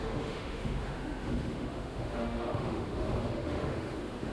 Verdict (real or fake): fake